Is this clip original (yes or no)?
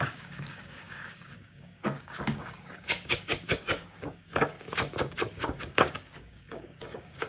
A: no